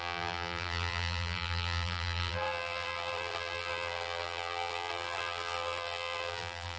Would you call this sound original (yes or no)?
no